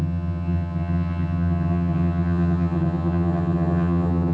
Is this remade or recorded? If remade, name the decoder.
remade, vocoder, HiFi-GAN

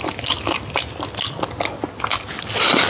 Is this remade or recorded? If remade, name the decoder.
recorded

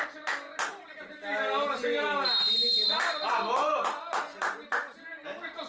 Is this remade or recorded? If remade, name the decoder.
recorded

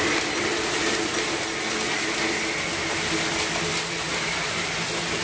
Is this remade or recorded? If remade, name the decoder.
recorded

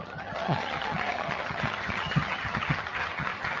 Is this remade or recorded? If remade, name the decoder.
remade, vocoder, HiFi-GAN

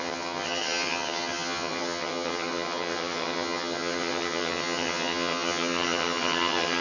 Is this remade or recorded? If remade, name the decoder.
remade, vocoder, HiFi-GAN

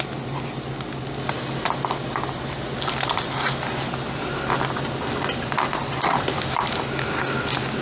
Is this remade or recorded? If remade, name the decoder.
recorded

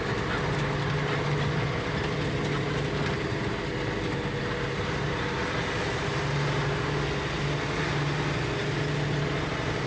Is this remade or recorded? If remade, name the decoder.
recorded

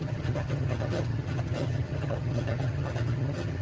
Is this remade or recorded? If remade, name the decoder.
remade, vocoder, HiFi-GAN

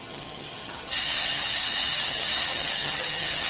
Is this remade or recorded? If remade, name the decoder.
remade, vocoder, HiFi-GAN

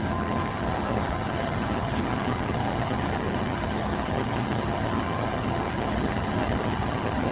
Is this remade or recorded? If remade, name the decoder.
remade, vocoder, HiFi-GAN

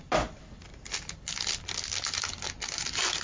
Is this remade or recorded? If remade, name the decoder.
recorded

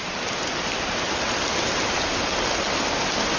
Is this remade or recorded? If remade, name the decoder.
recorded